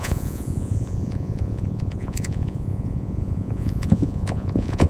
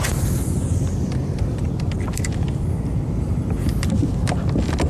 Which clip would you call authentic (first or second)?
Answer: second